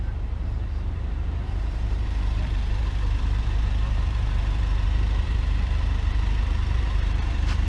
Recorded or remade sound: remade